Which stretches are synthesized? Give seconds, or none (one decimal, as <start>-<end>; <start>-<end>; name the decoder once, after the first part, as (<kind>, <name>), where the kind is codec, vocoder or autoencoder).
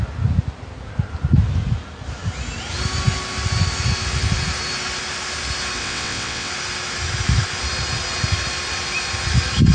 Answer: 5.8-6.5 (vocoder, WaveNeXt)